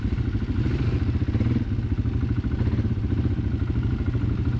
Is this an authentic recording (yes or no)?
yes